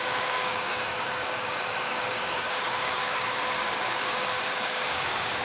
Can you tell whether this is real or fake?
fake